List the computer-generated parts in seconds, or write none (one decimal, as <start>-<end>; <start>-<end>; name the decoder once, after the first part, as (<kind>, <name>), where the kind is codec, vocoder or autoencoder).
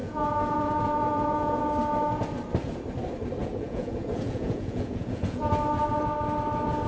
0.0-1.6 (vocoder, Vocos); 3.4-5.5